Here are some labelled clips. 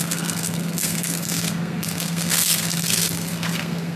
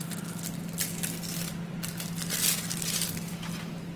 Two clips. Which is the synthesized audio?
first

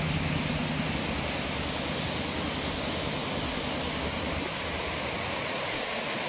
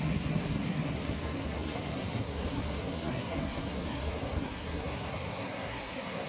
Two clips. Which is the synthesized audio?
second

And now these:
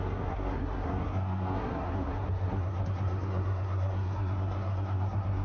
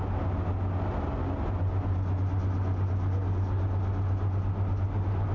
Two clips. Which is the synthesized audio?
first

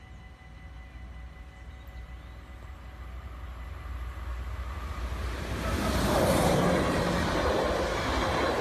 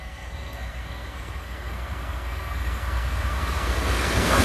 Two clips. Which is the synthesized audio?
second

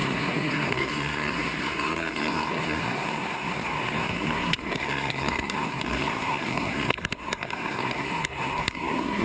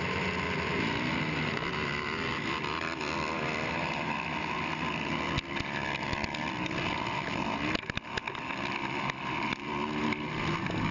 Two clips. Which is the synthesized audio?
first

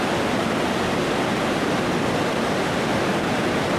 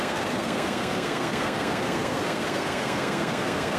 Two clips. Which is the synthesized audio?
second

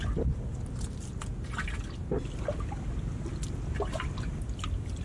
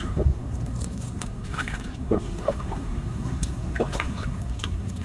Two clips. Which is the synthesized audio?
second